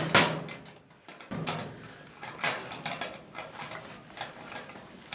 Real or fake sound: real